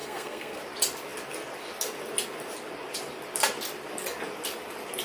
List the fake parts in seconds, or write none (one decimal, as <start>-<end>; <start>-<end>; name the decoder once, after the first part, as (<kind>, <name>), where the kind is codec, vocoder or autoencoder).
0.0-0.6 (codec, SNAC)